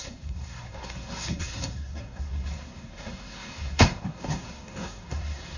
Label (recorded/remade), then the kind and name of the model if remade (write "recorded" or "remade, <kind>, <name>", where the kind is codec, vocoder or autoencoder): remade, codec, SNAC